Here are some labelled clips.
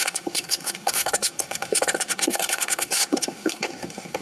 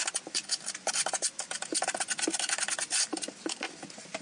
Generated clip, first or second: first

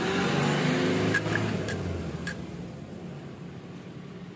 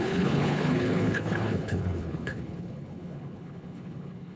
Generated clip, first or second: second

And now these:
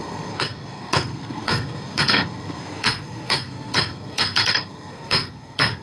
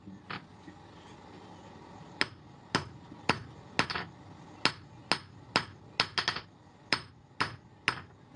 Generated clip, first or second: first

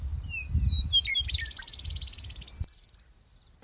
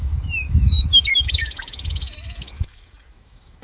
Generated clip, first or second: second